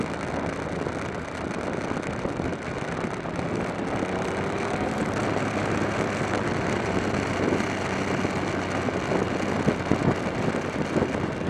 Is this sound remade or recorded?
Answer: recorded